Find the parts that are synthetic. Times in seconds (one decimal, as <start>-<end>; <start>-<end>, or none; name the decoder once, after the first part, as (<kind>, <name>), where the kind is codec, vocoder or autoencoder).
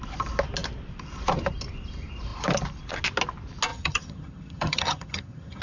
3.7-5.6 (vocoder, HiFi-GAN)